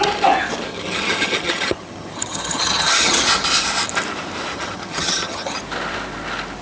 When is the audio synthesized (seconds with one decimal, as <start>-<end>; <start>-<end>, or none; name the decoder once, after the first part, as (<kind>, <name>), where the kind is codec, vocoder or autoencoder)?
0.7-3.2 (vocoder, HiFi-GAN); 4.5-5.6